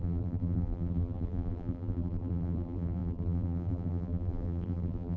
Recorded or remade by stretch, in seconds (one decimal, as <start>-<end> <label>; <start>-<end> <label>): 0.0-5.2 remade